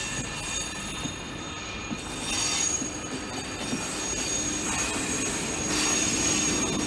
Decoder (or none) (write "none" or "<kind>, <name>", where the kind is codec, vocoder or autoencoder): none